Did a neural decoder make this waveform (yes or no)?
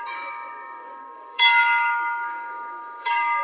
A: yes